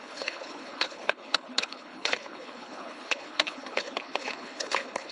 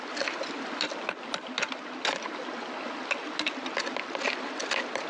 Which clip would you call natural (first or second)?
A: second